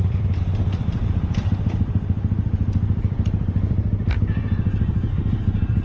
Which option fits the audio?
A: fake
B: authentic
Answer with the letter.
A